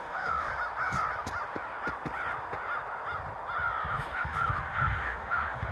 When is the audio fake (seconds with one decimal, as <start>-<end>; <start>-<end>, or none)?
0.0-0.5; 3.9-5.7